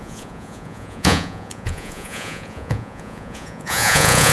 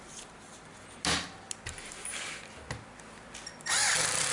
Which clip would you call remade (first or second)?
first